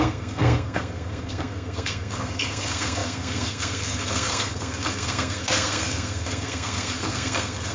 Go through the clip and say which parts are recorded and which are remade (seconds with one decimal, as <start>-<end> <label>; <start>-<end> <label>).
0.0-7.7 remade